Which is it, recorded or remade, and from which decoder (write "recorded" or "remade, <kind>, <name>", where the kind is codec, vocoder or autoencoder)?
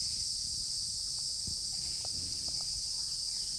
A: remade, vocoder, BigVGAN v2